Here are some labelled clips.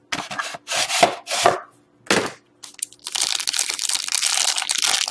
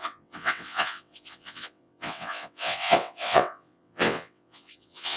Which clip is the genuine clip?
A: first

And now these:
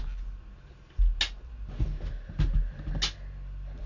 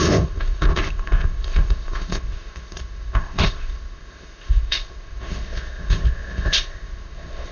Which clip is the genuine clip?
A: first